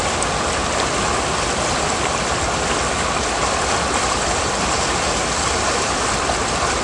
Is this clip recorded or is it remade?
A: recorded